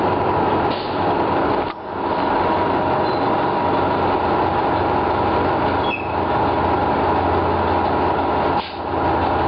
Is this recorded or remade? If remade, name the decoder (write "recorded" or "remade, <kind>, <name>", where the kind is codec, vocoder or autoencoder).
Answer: recorded